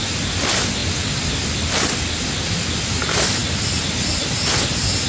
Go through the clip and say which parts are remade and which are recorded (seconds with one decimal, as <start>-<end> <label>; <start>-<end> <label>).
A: 0.0-5.1 recorded